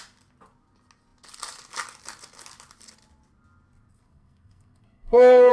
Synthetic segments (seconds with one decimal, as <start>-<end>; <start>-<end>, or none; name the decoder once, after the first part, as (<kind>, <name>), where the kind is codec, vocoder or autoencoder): 3.9-5.5 (codec, SNAC)